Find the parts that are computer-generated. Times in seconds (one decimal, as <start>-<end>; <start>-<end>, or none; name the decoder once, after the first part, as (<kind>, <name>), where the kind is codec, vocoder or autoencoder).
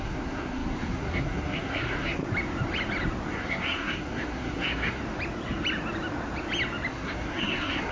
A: 0.0-2.2 (codec, SNAC); 3.3-5.0; 6.9-7.9